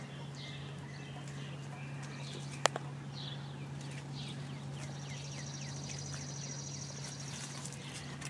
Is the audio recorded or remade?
recorded